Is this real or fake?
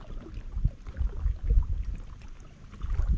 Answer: real